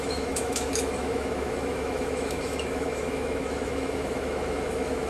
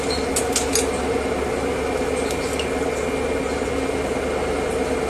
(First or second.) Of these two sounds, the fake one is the first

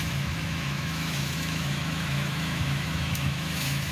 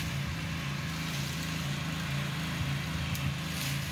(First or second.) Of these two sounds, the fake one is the first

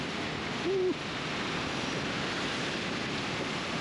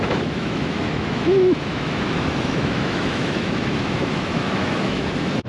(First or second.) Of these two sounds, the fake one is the second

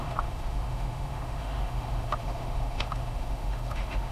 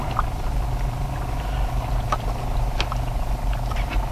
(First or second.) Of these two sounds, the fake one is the first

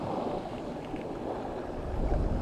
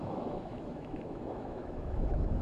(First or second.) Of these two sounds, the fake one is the second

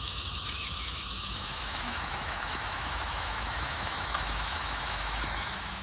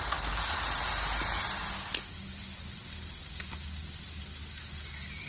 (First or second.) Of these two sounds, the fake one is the first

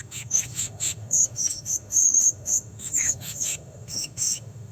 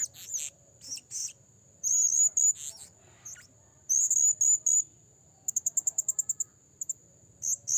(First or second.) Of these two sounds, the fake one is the first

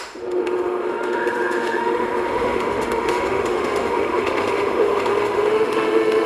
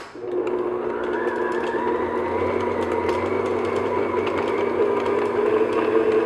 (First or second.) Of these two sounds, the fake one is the first